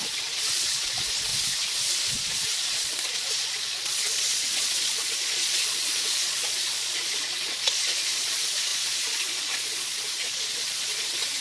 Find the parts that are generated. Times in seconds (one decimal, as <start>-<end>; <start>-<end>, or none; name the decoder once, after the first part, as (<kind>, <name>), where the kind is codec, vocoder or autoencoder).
0.0-1.3 (vocoder, Vocos); 1.9-11.4